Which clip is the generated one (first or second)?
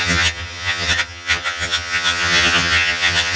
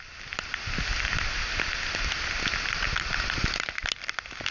first